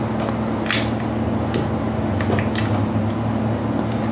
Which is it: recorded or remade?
recorded